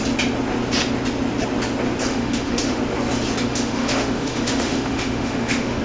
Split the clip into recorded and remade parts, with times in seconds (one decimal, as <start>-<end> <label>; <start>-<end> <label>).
0.0-2.1 recorded; 2.1-2.8 remade; 2.8-3.5 recorded; 3.5-5.8 remade

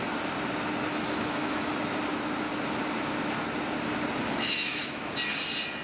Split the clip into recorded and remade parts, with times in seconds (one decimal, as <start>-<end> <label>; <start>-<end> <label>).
0.0-0.9 recorded; 0.9-1.7 remade; 1.7-4.2 recorded; 4.2-5.1 remade; 5.1-5.8 recorded

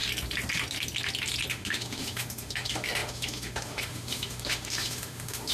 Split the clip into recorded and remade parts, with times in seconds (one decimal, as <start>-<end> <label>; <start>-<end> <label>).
0.0-1.5 recorded; 1.5-5.5 remade

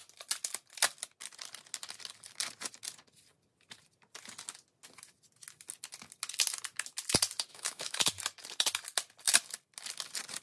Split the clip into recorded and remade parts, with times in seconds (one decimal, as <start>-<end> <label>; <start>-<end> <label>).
0.0-7.5 recorded; 7.5-8.0 remade; 8.0-10.4 recorded